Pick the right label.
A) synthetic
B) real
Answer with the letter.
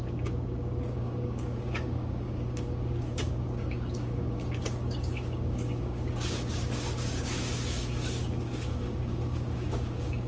A